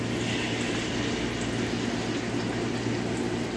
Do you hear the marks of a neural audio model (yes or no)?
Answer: no